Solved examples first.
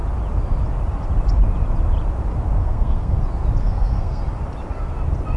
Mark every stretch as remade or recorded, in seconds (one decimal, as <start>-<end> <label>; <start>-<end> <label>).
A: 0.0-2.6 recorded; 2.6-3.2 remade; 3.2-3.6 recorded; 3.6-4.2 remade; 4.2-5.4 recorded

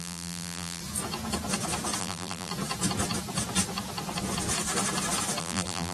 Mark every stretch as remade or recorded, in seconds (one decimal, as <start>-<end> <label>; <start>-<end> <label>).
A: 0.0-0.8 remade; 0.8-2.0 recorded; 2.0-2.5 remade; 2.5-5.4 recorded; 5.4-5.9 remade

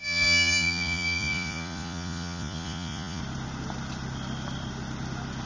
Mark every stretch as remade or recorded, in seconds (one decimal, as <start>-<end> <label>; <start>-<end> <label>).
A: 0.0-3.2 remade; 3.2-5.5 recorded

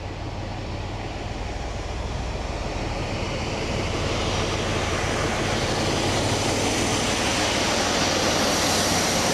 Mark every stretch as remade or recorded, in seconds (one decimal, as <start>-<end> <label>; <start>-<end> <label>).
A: 0.0-2.6 recorded; 2.6-3.8 remade; 3.8-9.3 recorded

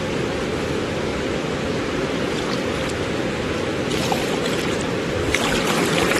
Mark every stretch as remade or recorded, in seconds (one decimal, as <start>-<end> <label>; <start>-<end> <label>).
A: 0.0-1.1 recorded; 1.1-1.8 remade; 1.8-6.2 recorded

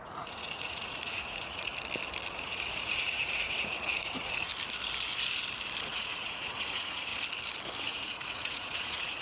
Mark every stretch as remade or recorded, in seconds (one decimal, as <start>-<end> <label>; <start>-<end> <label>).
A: 0.0-1.7 remade; 1.7-2.3 recorded; 2.3-4.5 remade; 4.5-5.8 recorded; 5.8-7.1 remade; 7.1-7.8 recorded; 7.8-9.2 remade